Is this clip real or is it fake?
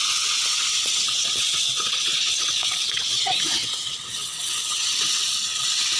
fake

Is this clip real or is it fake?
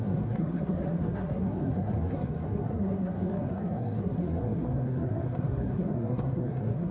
fake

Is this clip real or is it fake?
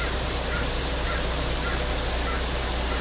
real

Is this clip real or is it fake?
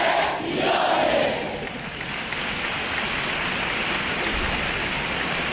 real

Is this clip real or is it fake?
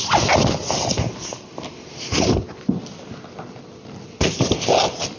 real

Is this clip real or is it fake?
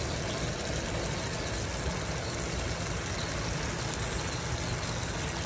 real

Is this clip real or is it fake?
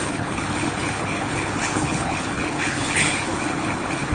fake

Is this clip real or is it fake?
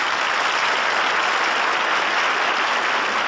real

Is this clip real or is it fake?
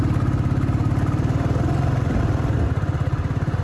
real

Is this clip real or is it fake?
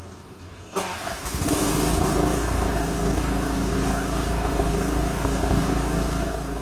fake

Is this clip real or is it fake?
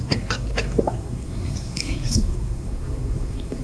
fake